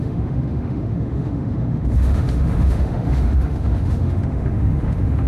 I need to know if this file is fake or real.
fake